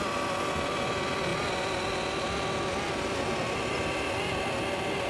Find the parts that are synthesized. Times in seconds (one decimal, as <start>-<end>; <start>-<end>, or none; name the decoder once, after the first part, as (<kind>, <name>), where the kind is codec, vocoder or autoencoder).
none